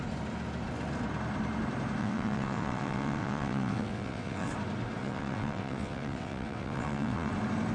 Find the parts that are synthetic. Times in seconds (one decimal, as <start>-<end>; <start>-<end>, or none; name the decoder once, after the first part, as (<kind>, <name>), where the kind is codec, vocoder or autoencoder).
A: 2.0-4.5 (vocoder, WaveNeXt); 5.0-7.3